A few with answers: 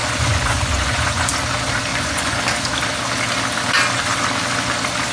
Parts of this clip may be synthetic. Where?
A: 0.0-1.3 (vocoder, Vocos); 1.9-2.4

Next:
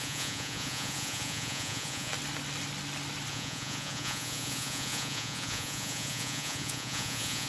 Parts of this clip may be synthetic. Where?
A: 0.0-2.1 (vocoder, Vocos); 3.3-7.5

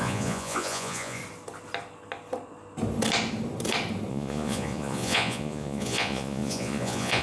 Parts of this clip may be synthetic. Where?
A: 0.0-1.2 (vocoder, Vocos); 4.1-7.2

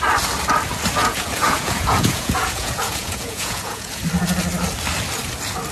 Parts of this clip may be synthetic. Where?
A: 1.0-4.0 (vocoder, Vocos)